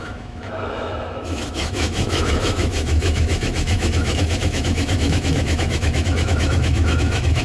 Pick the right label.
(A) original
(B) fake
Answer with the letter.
B